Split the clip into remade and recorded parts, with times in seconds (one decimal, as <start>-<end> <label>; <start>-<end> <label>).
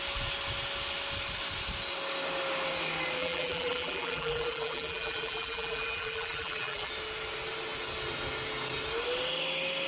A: 0.0-3.2 recorded; 3.2-6.9 remade; 6.9-9.9 recorded